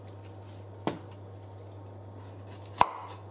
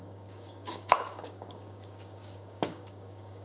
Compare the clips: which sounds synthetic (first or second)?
second